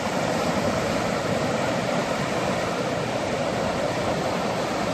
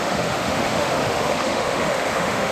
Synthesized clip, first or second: second